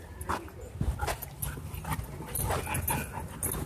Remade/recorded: recorded